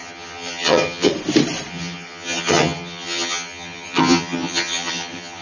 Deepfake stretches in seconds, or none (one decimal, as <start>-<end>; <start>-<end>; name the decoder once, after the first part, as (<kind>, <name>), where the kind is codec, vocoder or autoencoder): 0.0-1.1 (vocoder, HiFi-GAN); 1.7-5.4